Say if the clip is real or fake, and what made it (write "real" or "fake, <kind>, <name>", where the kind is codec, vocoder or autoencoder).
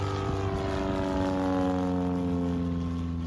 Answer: real